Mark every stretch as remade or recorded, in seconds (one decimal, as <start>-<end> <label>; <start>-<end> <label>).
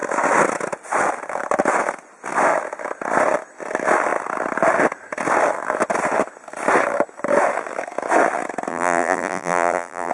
0.0-8.7 recorded; 8.7-10.1 remade